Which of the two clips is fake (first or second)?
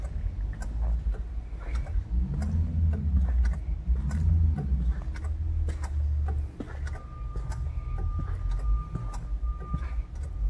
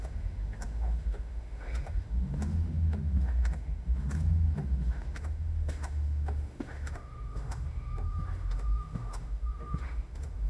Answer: second